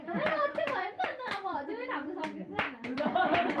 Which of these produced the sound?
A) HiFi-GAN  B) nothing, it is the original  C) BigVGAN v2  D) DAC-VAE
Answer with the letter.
C